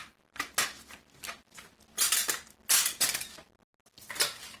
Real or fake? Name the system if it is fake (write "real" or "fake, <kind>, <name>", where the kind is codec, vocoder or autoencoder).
real